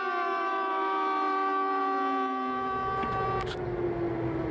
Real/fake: real